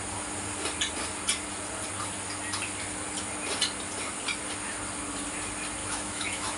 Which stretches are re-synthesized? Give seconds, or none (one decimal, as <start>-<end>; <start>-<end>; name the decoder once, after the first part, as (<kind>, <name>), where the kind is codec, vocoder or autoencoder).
5.8-6.6 (autoencoder, DAC-VAE)